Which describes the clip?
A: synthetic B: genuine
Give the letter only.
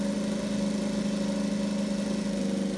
B